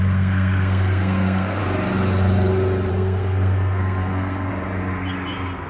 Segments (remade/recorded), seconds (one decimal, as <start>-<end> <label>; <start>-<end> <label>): 0.0-1.6 remade; 1.6-2.9 recorded; 2.9-4.5 remade; 4.5-5.7 recorded